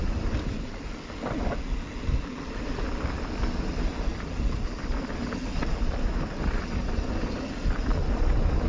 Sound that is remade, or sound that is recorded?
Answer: recorded